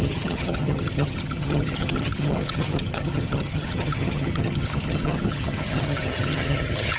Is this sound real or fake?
fake